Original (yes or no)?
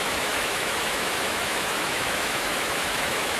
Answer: no